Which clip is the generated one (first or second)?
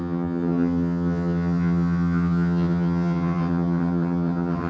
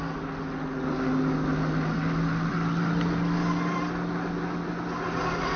first